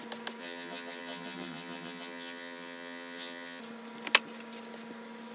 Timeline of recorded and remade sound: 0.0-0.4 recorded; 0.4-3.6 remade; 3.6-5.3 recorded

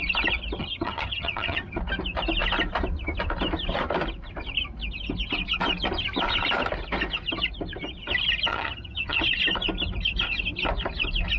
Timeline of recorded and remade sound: 0.0-0.6 recorded; 0.6-1.8 remade; 1.8-8.5 recorded; 8.5-9.2 remade; 9.2-11.4 recorded

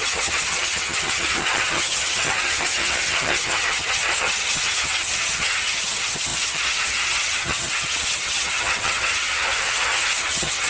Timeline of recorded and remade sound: 0.0-10.7 remade

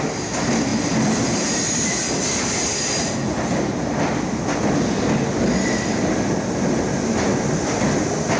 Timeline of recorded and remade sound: 0.0-8.4 recorded

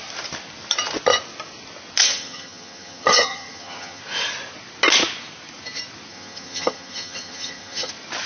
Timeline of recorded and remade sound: 0.0-2.0 recorded; 2.0-4.0 remade; 4.0-6.1 recorded; 6.1-7.9 remade; 7.9-8.3 recorded